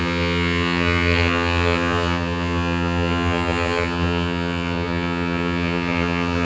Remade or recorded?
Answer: remade